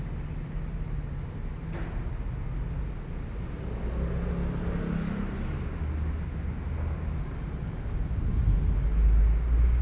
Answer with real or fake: real